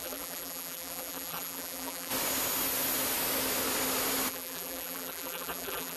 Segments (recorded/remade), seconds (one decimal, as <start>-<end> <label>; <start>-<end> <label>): 0.0-2.1 remade; 2.1-4.3 recorded; 4.3-6.0 remade

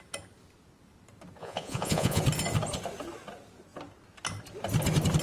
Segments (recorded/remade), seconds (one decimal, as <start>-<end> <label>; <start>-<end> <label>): 0.0-1.4 recorded; 1.4-2.2 remade; 2.2-5.2 recorded

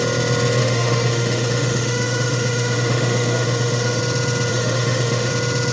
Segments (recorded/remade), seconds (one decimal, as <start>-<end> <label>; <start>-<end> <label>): 0.0-0.6 recorded; 0.6-4.0 remade; 4.0-4.5 recorded; 4.5-5.3 remade; 5.3-5.7 recorded

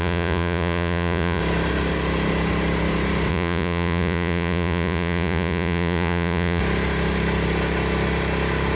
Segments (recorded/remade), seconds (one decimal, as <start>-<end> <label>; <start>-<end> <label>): 0.0-1.4 remade; 1.4-3.3 recorded; 3.3-6.6 remade; 6.6-8.8 recorded

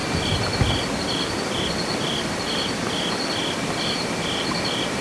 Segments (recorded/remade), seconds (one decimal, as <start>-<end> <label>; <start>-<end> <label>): 0.0-0.7 recorded; 0.7-5.0 remade

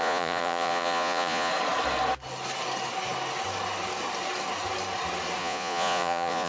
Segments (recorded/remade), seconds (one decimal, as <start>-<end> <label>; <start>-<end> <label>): 0.0-1.5 remade; 1.5-5.4 recorded; 5.4-6.5 remade